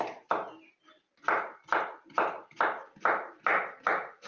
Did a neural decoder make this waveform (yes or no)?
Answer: no